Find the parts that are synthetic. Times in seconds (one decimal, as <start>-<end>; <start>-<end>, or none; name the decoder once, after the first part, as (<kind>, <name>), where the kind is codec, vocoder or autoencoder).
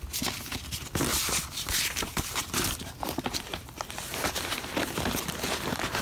1.1-4.7 (vocoder, BigVGAN v2)